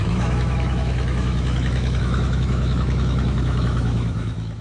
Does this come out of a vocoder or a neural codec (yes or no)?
yes